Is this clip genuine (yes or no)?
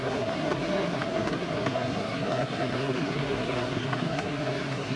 no